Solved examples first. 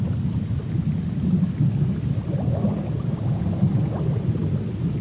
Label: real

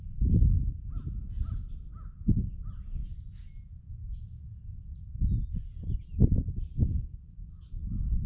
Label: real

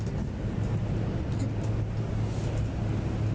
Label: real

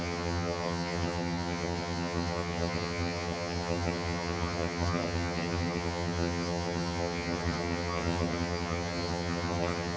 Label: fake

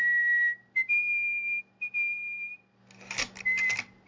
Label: real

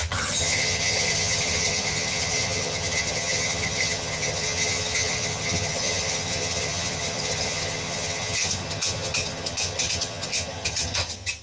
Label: fake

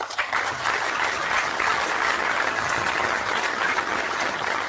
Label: fake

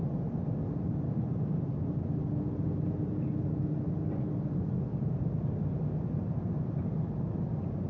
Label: real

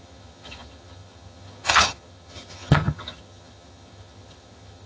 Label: fake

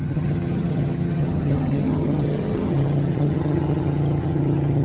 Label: fake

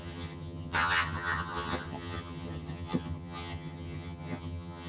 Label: fake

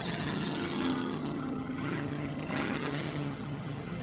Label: fake